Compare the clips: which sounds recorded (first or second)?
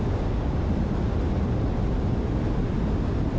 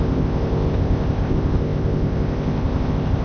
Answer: first